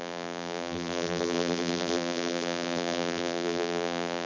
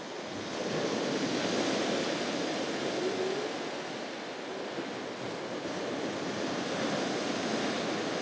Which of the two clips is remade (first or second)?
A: first